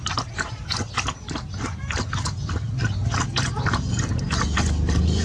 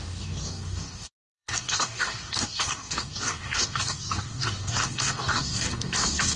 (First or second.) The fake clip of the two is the second